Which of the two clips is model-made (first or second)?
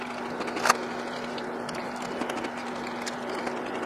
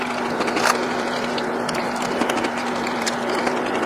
second